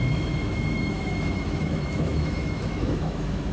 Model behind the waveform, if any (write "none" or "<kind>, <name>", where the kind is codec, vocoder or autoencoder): autoencoder, DAC-VAE